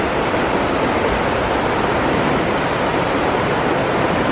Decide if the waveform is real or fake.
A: real